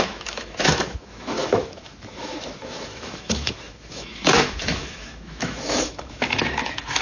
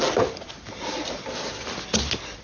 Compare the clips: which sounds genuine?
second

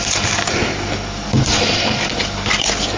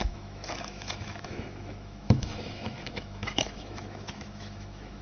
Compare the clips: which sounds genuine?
first